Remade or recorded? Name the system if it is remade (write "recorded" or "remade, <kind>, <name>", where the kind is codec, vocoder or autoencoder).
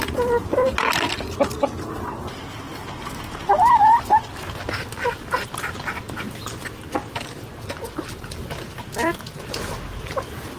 recorded